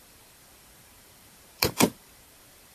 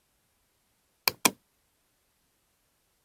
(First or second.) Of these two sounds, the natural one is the second